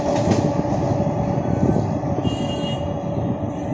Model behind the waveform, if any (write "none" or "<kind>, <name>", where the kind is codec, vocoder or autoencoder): none